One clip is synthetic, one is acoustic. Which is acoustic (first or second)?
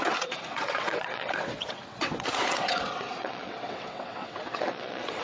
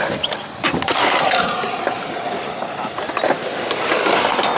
second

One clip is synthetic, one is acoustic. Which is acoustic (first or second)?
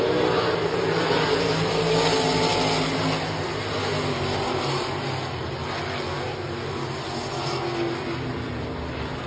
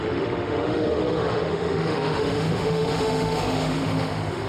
first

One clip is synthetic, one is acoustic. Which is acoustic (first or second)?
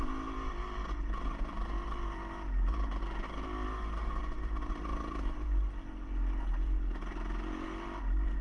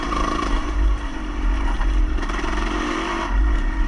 first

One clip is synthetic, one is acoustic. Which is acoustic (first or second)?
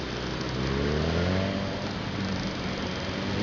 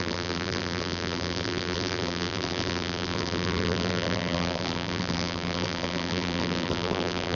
first